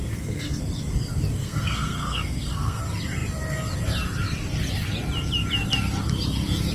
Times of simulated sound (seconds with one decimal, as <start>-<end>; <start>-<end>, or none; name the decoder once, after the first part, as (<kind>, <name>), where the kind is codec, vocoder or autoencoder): 0.0-0.6 (codec, SNAC); 1.4-2.8